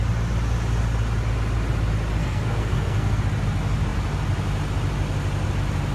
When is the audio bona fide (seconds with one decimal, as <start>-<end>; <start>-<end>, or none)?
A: 0.0-2.2; 3.2-5.9